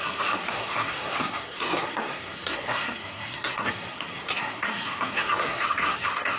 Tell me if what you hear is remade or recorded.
remade